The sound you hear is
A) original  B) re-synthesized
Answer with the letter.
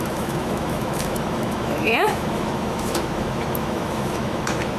B